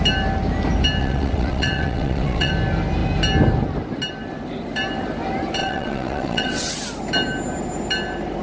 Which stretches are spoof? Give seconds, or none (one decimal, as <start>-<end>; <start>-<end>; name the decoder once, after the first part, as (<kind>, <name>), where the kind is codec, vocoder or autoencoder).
1.0-2.5 (vocoder, WaveNeXt); 5.6-6.7